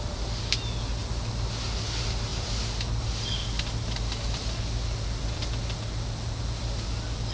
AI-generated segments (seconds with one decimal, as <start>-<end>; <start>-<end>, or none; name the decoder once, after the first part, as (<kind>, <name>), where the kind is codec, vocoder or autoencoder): none